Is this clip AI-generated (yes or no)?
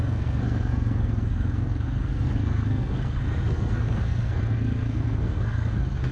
yes